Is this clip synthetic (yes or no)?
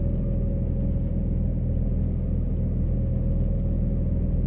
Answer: no